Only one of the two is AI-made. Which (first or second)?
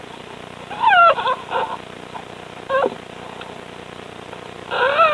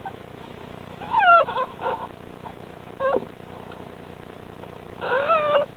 second